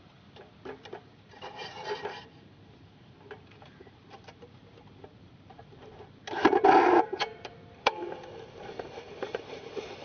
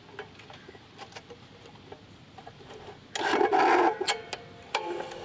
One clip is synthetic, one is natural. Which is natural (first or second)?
second